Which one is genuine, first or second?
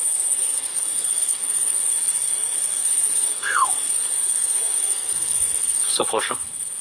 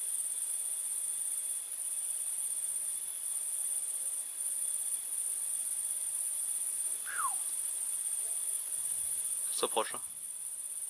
second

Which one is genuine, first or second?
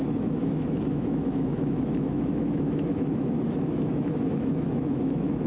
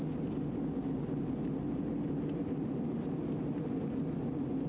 second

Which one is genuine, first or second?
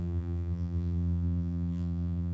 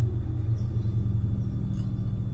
second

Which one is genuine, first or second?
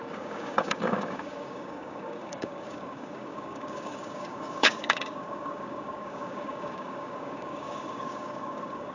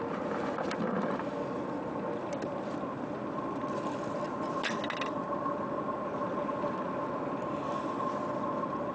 second